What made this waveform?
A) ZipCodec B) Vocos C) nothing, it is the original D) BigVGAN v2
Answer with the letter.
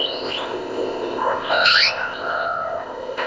A